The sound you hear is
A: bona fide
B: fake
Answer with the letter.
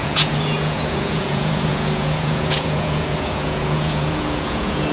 B